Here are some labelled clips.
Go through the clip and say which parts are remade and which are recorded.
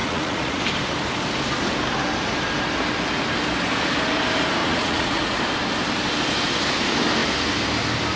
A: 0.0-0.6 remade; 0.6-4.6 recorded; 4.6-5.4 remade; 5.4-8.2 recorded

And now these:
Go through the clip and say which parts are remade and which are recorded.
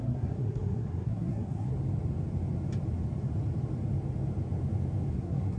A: 0.0-1.7 remade; 1.7-5.1 recorded; 5.1-5.6 remade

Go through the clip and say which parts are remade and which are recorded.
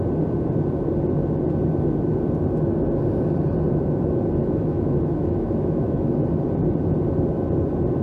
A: 0.0-4.4 recorded; 4.4-6.1 remade; 6.1-8.0 recorded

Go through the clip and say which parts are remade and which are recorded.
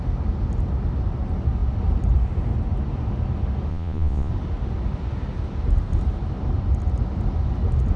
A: 0.0-3.7 recorded; 3.7-4.3 remade; 4.3-8.0 recorded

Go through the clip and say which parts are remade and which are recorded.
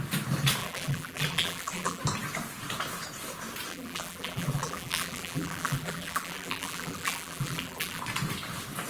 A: 0.0-0.6 recorded; 0.6-2.0 remade; 2.0-3.7 recorded; 3.7-8.0 remade; 8.0-8.9 recorded